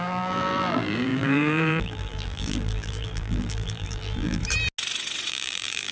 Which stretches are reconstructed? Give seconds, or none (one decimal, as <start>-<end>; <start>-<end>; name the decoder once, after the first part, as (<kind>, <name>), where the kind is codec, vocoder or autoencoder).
0.0-4.4 (vocoder, BigVGAN v2); 5.3-5.9